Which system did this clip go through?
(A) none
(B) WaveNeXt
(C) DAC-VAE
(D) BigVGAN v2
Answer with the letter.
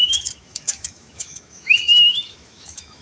C